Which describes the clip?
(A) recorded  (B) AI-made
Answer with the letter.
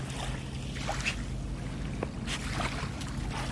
A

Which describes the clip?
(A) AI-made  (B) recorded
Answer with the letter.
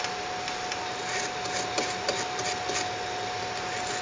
B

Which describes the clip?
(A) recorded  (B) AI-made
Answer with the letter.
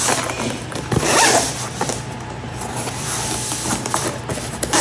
A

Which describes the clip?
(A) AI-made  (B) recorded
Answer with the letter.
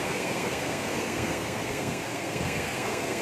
A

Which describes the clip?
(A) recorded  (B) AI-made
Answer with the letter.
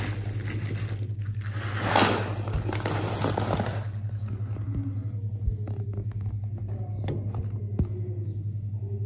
A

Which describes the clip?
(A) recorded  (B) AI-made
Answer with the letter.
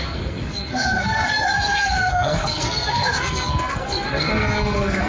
B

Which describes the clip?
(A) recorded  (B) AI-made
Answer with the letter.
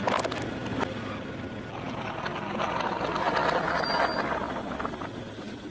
A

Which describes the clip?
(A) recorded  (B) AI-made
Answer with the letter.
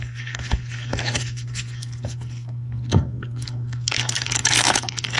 B